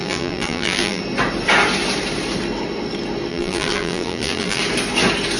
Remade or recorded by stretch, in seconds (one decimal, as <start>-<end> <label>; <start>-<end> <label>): 0.0-1.0 remade; 1.0-3.3 recorded; 3.3-4.6 remade; 4.6-5.4 recorded